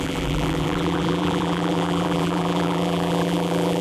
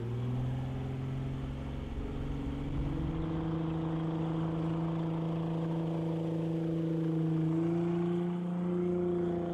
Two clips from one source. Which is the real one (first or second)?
second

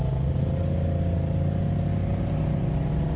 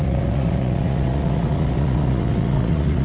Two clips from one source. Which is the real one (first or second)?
first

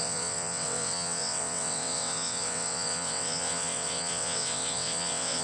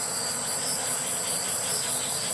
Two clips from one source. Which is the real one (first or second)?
second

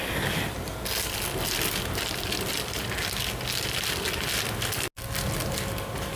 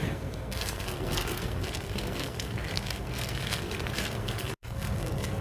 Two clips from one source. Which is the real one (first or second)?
first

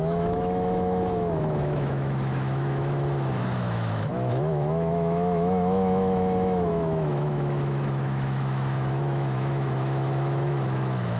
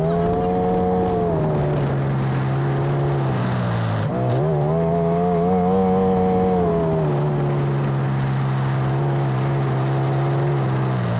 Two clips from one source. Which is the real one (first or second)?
second